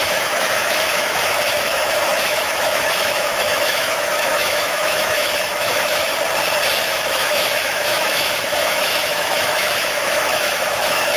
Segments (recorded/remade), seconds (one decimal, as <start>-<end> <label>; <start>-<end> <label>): 0.0-6.1 remade; 6.1-6.8 recorded; 6.8-11.2 remade